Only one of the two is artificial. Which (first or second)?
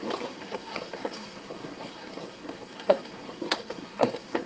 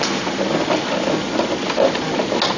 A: first